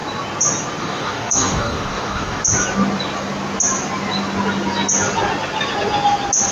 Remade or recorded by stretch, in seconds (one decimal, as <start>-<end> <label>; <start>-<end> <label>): 0.0-0.8 recorded; 0.8-2.4 remade; 2.4-6.5 recorded